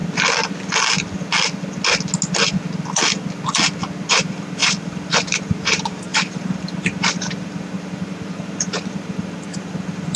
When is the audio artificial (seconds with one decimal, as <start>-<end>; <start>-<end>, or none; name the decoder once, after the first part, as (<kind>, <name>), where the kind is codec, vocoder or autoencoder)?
4.1-10.2 (vocoder, BigVGAN v2)